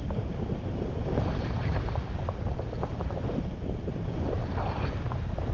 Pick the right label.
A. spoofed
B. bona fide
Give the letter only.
A